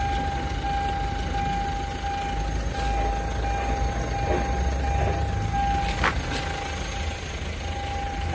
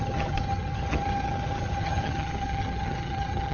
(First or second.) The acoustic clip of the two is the first